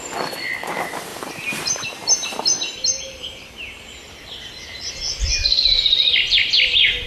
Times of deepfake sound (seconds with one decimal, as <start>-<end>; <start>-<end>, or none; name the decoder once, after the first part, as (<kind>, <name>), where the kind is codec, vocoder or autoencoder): 1.1-4.9 (vocoder, BigVGAN v2)